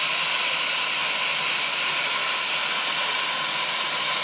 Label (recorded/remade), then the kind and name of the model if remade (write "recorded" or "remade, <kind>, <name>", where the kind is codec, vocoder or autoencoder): recorded